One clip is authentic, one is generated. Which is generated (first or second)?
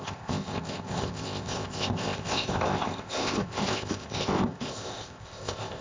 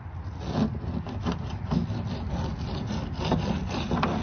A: first